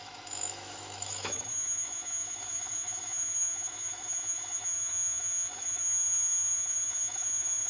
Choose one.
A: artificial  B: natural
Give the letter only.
A